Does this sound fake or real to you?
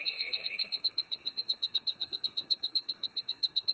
fake